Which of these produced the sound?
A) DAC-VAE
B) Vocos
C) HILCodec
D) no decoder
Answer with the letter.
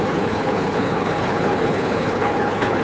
C